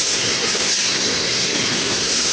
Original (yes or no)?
no